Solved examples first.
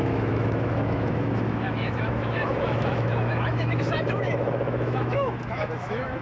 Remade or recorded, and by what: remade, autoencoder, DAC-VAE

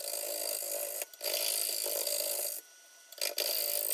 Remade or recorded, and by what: recorded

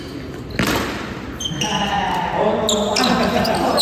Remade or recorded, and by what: recorded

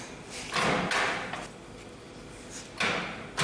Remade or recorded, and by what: recorded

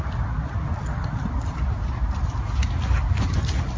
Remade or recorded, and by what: recorded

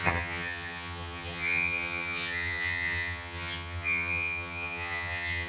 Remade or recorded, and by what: remade, vocoder, HiFi-GAN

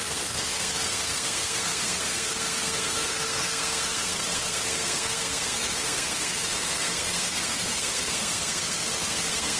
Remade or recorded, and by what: remade, codec, SNAC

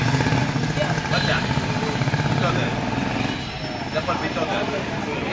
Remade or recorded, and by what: recorded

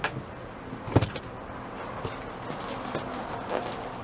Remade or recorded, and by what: recorded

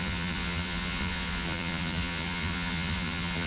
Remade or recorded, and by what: remade, vocoder, Vocos